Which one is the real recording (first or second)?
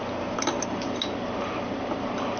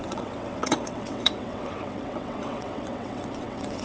first